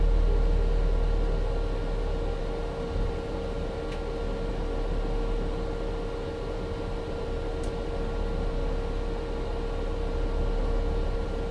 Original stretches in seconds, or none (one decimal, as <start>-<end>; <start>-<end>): 0.0-11.5